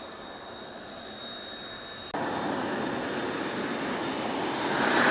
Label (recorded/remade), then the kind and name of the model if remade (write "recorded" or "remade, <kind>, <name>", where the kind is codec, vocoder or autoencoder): recorded